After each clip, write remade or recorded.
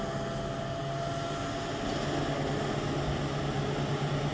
recorded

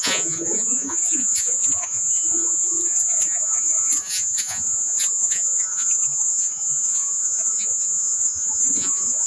remade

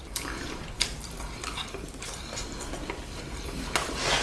recorded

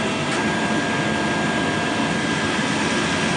recorded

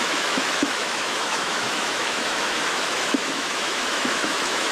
remade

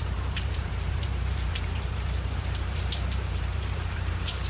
remade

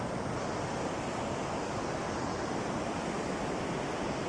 recorded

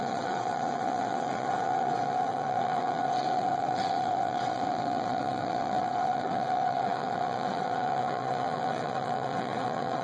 remade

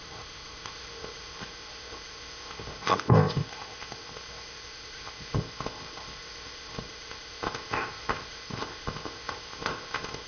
remade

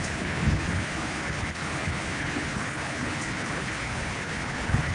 remade